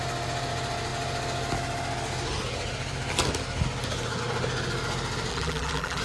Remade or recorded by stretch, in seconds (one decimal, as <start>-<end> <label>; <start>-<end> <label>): 0.0-5.3 recorded; 5.3-6.0 remade

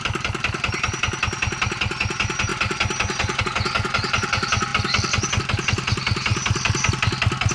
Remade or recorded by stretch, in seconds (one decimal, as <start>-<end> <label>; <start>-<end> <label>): 0.0-2.5 recorded; 2.5-3.4 remade; 3.4-7.5 recorded

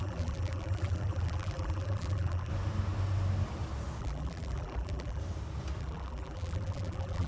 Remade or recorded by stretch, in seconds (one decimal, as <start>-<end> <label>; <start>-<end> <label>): 0.0-2.5 remade; 2.5-4.0 recorded; 4.0-5.2 remade; 5.2-5.8 recorded; 5.8-7.3 remade

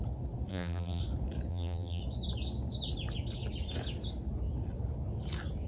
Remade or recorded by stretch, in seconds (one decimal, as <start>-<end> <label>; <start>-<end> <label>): 0.0-0.5 recorded; 0.5-1.0 remade; 1.0-1.5 recorded; 1.5-2.0 remade; 2.0-5.7 recorded

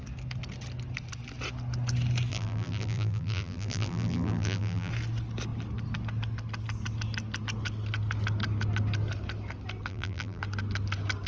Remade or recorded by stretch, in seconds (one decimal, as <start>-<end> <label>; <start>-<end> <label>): 0.0-2.3 recorded; 2.3-4.9 remade; 4.9-9.9 recorded; 9.9-10.4 remade; 10.4-11.3 recorded

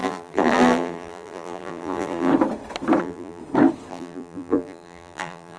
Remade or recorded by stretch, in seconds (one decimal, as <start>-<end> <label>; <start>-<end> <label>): 0.0-2.3 remade; 2.3-3.0 recorded; 3.0-3.4 remade; 3.4-3.9 recorded; 3.9-5.6 remade

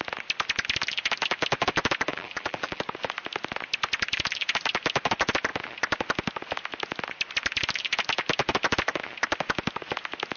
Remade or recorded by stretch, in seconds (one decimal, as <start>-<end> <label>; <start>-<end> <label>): 0.0-2.1 recorded; 2.1-2.8 remade; 2.8-10.4 recorded

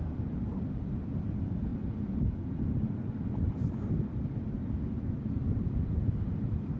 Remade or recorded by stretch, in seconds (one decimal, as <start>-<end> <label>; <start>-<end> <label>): 0.0-1.7 remade; 1.7-2.2 recorded; 2.2-4.6 remade; 4.6-5.5 recorded; 5.5-6.8 remade